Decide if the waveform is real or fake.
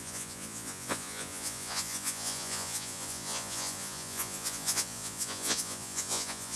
fake